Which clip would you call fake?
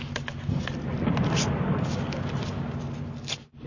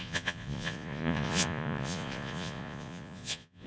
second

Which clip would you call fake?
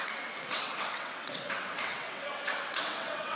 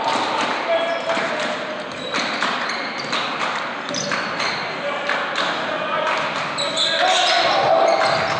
first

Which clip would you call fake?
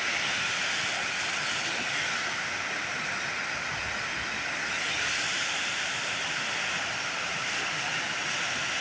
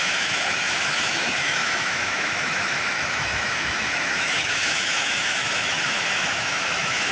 second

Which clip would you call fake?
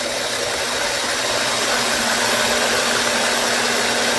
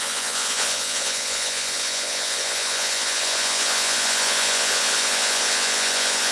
second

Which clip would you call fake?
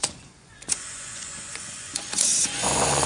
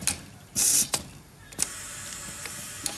first